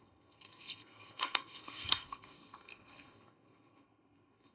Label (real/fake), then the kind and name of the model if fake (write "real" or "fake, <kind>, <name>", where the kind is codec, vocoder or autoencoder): fake, codec, SNAC